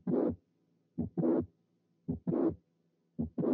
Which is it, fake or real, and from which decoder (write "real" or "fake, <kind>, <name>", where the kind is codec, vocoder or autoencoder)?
real